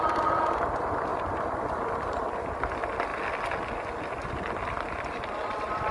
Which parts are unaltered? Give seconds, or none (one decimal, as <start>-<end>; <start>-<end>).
0.0-5.9